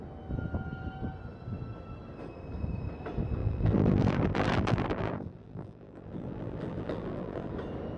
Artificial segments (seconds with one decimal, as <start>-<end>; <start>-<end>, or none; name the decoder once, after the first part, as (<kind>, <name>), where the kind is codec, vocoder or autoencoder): 3.4-7.5 (vocoder, BigVGAN v2)